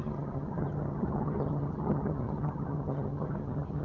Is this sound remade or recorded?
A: remade